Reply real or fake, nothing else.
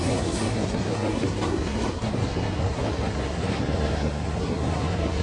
fake